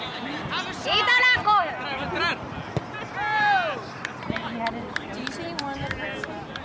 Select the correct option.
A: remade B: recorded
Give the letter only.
B